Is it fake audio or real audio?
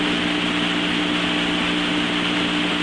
real